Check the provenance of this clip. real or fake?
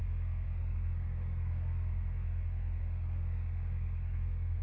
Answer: fake